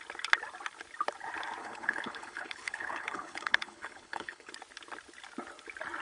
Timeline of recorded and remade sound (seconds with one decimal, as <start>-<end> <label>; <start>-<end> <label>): 0.0-1.6 recorded; 1.6-4.5 remade; 4.5-6.0 recorded